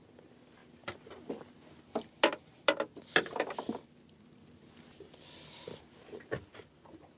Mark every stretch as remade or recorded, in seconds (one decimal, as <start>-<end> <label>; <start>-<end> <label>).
0.0-7.2 recorded